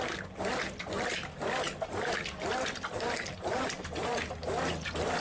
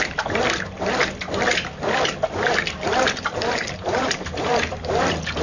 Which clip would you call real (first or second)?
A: first